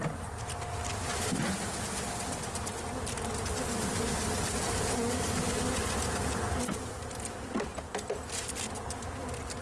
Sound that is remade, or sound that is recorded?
recorded